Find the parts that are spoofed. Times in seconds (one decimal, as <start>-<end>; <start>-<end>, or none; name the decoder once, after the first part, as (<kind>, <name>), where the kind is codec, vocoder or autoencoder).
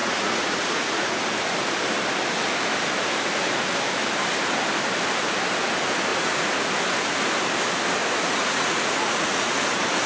0.0-1.2 (vocoder, Vocos); 6.1-6.7; 8.0-9.6